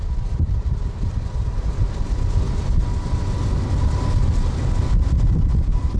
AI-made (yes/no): no